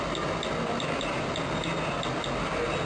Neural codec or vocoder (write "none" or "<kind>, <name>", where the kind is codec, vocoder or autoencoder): none